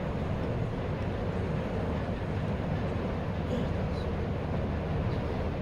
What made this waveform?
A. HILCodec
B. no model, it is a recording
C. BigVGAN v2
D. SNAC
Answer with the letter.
B